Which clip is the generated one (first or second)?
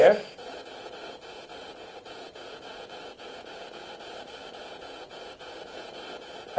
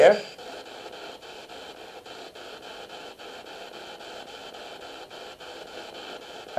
first